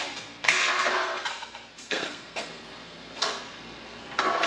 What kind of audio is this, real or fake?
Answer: fake